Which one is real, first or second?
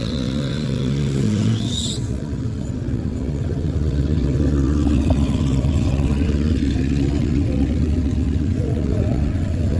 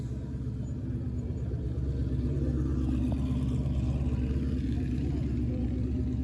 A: second